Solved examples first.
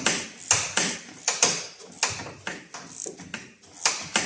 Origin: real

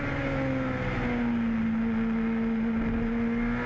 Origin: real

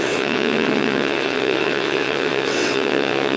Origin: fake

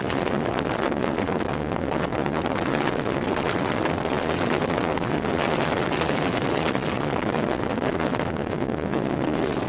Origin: fake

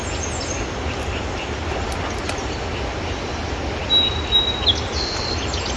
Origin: real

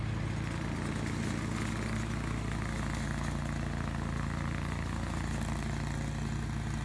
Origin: real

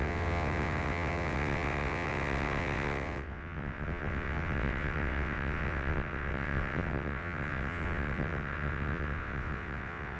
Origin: fake